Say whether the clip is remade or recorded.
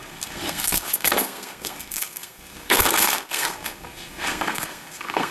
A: remade